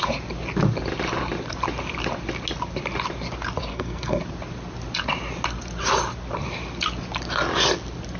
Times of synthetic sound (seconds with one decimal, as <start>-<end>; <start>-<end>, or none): 3.7-4.2

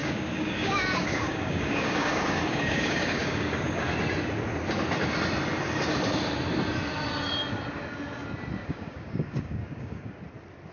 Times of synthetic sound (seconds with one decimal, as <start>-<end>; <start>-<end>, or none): 0.0-3.9; 8.6-10.2

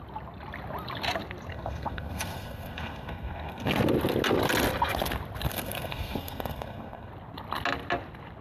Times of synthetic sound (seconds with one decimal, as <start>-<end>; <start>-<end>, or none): 1.5-3.7; 5.5-7.1

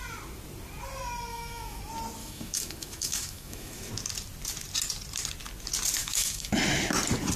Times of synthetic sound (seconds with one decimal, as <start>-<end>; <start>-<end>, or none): 1.3-1.8; 2.2-3.9; 6.0-6.5

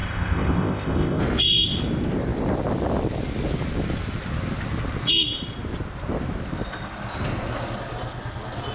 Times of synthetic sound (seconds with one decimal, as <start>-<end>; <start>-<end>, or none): 0.0-1.2

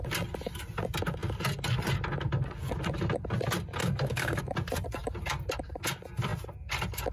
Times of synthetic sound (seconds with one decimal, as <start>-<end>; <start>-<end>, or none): 3.8-4.4

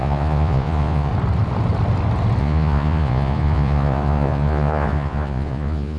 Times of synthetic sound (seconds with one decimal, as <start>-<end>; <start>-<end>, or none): 0.0-1.1; 2.4-6.0